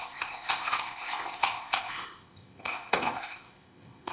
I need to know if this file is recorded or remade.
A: remade